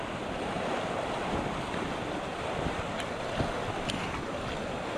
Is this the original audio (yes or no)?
yes